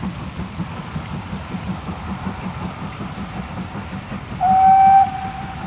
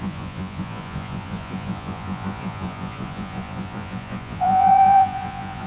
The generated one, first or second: second